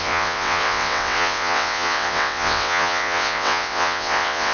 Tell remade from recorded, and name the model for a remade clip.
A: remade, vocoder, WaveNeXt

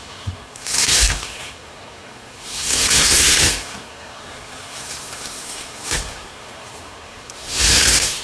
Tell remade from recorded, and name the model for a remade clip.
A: remade, codec, SNAC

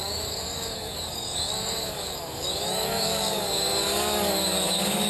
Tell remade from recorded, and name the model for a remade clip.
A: remade, codec, DAC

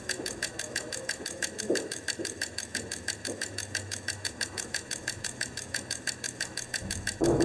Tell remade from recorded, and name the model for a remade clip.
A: remade, autoencoder, DAC-VAE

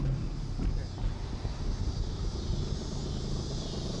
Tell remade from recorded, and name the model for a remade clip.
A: recorded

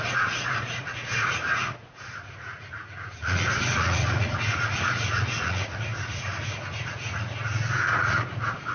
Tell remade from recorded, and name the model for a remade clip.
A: remade, vocoder, Vocos